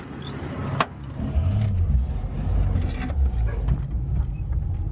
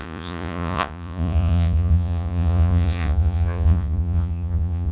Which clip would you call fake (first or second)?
second